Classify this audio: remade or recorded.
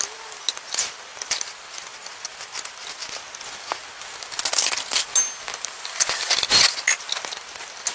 recorded